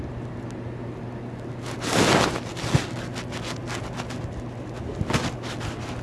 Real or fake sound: real